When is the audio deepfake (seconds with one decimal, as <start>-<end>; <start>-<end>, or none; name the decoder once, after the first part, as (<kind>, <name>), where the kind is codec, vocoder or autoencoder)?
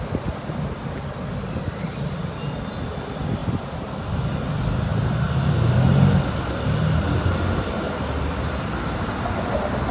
none